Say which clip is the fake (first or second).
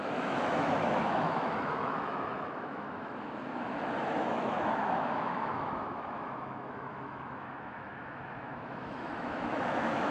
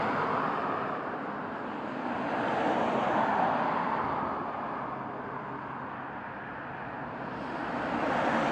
first